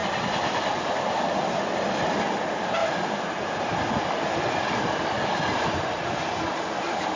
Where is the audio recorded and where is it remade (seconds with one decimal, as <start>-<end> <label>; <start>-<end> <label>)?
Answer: 0.0-1.6 remade; 1.6-2.8 recorded; 2.8-7.2 remade